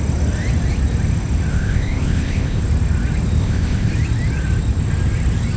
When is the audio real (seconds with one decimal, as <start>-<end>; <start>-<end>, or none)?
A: 0.0-1.5; 2.6-3.4; 3.9-5.6